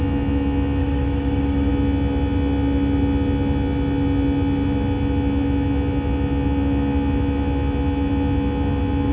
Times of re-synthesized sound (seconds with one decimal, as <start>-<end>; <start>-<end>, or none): 0.8-1.7